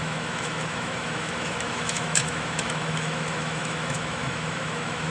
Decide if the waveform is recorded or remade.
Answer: remade